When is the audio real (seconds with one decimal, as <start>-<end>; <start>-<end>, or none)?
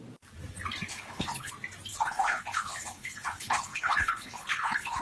0.0-0.9; 1.5-1.9